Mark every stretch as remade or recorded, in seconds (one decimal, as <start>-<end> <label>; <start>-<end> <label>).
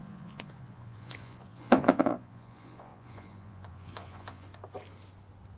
0.0-4.5 remade; 4.5-5.6 recorded